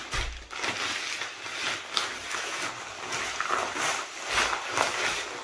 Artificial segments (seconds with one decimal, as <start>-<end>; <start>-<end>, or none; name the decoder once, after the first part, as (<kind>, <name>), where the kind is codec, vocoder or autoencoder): none